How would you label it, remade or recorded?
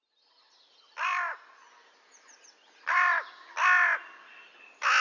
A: recorded